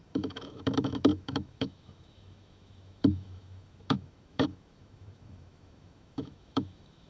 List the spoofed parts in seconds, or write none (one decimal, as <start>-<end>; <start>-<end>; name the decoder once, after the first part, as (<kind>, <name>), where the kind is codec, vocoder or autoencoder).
0.0-7.1 (autoencoder, DAC-VAE)